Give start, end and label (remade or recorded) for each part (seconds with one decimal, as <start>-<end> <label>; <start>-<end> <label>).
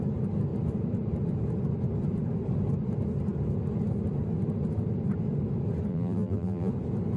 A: 0.0-5.9 recorded; 5.9-6.7 remade; 6.7-7.2 recorded